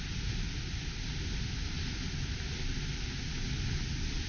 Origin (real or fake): real